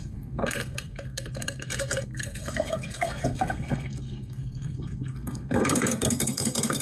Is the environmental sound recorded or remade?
remade